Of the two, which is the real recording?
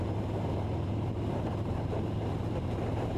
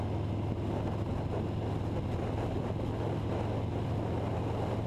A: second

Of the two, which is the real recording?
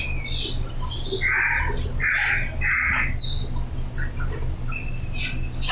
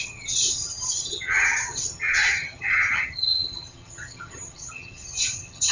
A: first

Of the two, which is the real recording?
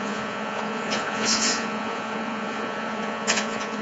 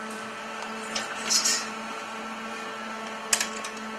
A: second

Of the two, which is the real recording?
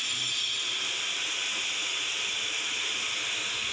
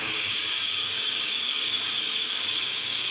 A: first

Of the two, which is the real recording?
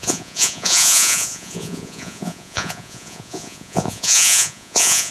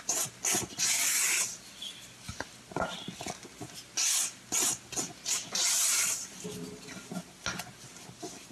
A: second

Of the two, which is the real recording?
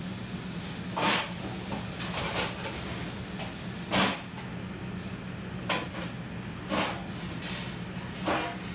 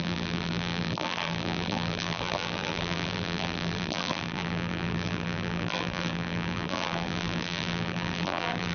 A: first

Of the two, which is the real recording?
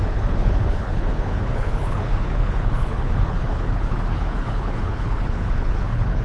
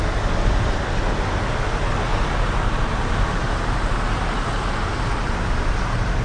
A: second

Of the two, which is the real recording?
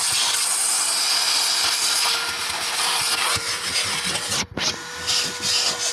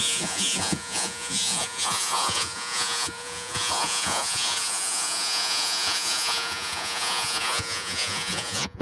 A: first